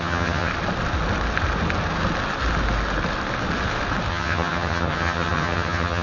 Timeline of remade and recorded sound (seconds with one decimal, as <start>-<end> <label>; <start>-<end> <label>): 0.0-0.5 remade; 0.5-4.1 recorded; 4.1-6.0 remade